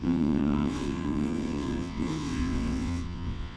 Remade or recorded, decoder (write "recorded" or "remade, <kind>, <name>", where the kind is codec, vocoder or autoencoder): remade, vocoder, WaveNeXt